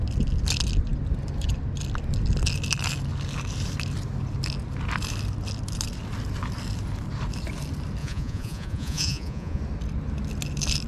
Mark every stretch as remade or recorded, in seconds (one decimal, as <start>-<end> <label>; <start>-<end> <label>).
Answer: 0.0-8.0 recorded; 8.0-9.6 remade; 9.6-10.9 recorded

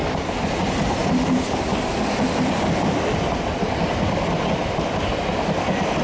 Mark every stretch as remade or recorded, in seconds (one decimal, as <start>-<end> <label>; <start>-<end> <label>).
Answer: 0.0-6.0 recorded

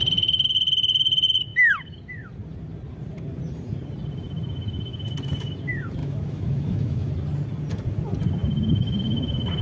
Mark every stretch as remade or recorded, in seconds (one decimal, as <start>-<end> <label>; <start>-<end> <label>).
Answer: 0.0-6.0 recorded; 6.0-7.1 remade; 7.1-9.6 recorded

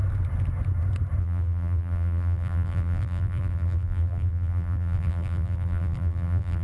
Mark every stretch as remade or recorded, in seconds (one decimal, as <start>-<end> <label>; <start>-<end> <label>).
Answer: 0.0-1.2 recorded; 1.2-6.6 remade